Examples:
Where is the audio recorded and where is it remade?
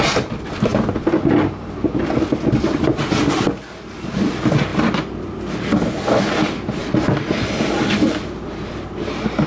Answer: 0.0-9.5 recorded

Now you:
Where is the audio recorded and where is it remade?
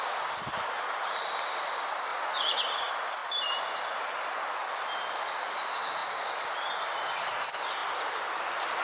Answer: 0.0-2.1 recorded; 2.1-2.6 remade; 2.6-8.8 recorded